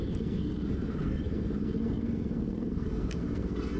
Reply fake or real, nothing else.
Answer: fake